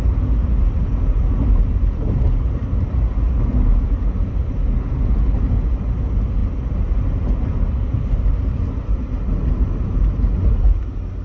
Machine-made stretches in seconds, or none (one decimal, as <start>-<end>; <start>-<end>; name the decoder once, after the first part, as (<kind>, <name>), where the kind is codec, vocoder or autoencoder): none